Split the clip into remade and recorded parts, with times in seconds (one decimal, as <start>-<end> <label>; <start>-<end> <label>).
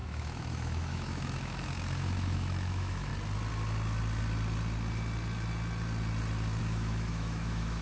0.0-3.1 remade; 3.1-6.6 recorded; 6.6-7.8 remade